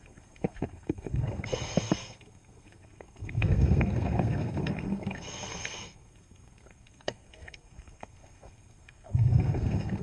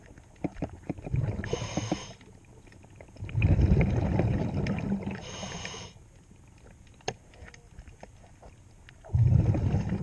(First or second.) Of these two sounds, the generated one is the first